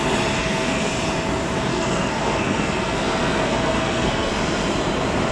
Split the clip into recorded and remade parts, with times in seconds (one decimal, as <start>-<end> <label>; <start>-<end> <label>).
0.0-0.4 recorded; 0.4-0.9 remade; 0.9-1.7 recorded; 1.7-4.3 remade; 4.3-5.3 recorded